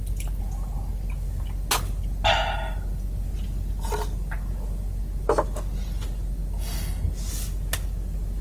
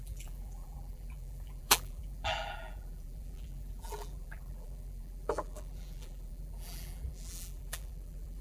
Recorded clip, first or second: first